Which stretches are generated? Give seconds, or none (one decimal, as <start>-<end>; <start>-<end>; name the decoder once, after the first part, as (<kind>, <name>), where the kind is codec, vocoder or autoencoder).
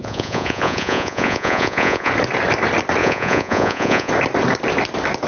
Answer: 0.0-2.1 (vocoder, Vocos); 3.0-4.1